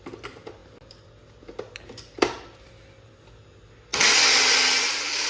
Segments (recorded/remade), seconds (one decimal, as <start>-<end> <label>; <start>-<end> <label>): 0.0-5.3 recorded